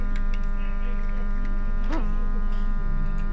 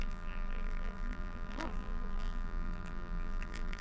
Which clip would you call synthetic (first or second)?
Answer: second